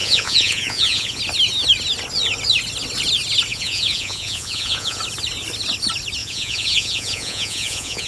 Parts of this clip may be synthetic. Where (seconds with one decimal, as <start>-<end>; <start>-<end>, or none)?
0.0-1.2; 3.5-5.0; 6.2-8.1

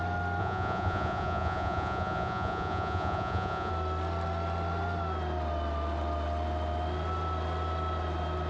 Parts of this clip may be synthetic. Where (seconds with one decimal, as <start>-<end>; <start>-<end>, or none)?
0.4-3.7

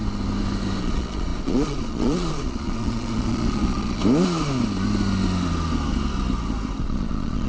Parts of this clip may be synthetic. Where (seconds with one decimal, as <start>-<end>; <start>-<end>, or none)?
0.8-4.0; 6.8-7.5

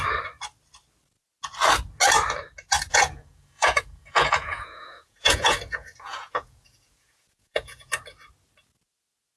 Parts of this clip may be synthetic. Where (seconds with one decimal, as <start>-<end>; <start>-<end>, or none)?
2.9-7.9

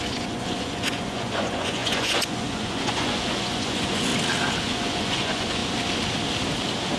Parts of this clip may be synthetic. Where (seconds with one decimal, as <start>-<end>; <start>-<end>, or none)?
0.0-4.1; 4.6-5.6

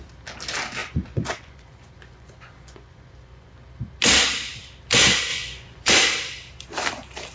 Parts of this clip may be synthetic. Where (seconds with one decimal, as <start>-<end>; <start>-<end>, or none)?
0.8-3.6; 5.3-5.9

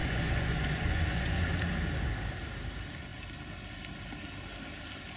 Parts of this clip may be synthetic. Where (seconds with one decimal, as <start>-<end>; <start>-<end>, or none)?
0.0-1.4